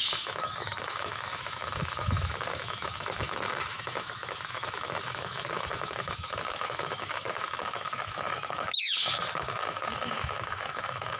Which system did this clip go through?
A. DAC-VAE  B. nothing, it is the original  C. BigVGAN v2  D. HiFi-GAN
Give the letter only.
A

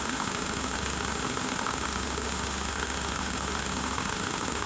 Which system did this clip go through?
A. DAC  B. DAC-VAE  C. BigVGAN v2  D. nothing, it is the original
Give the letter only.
B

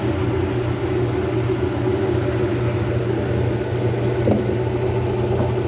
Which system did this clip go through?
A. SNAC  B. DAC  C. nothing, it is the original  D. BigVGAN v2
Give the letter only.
C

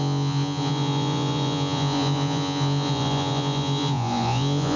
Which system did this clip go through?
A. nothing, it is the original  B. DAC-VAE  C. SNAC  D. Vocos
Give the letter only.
D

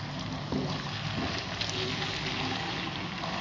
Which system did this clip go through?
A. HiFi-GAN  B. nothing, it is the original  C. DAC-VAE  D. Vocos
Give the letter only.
B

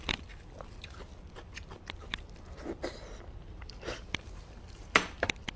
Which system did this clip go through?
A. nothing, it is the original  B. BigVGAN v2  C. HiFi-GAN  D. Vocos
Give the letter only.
B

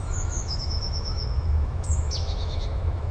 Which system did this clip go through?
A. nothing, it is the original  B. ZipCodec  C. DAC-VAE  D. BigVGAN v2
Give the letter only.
C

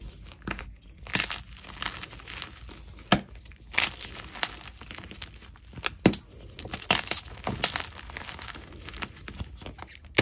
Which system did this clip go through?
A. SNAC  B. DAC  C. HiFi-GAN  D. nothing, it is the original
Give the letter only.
D